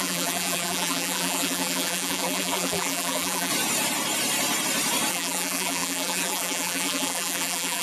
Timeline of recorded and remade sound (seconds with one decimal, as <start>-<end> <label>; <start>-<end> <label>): 0.0-3.5 remade; 3.5-5.1 recorded; 5.1-7.8 remade